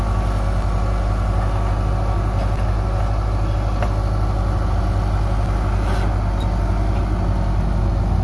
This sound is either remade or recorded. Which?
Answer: recorded